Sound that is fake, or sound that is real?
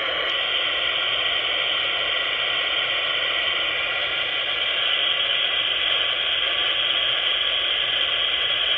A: real